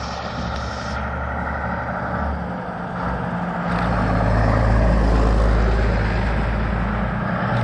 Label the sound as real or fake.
real